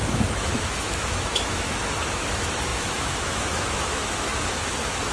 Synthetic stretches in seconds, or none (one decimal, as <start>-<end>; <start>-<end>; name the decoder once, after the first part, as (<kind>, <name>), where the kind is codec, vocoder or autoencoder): 0.0-5.1 (autoencoder, DAC-VAE)